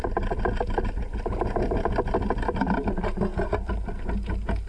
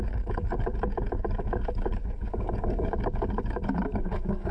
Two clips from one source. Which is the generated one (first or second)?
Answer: second